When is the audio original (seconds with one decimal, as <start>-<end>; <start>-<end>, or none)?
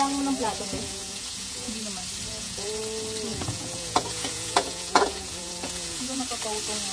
0.0-0.4; 1.8-2.3; 2.8-3.3; 6.2-6.9